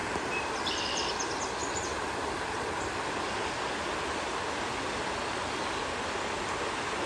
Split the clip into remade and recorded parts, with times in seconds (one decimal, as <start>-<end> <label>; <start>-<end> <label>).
0.0-7.1 recorded